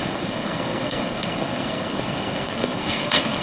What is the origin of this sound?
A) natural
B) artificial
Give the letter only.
B